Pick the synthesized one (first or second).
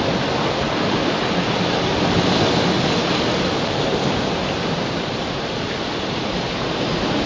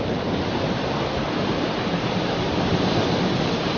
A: second